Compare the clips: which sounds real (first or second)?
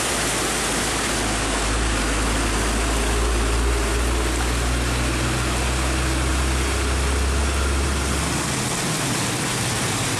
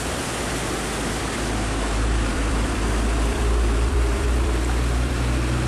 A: first